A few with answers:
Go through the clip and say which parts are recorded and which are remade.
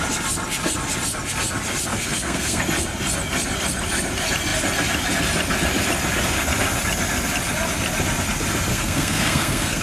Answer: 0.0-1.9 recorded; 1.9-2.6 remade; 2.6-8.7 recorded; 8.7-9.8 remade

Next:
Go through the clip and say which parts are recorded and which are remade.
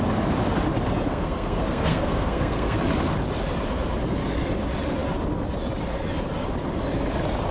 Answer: 0.0-1.1 recorded; 1.1-2.8 remade; 2.8-7.5 recorded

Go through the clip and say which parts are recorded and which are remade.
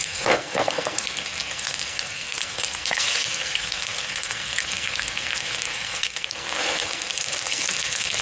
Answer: 0.0-8.2 remade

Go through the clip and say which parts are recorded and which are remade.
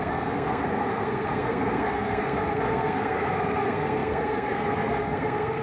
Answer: 0.0-5.6 remade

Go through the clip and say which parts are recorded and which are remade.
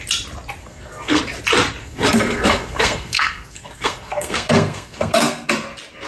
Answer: 0.0-0.6 recorded; 0.6-1.2 remade; 1.2-1.8 recorded; 1.8-5.5 remade; 5.5-6.1 recorded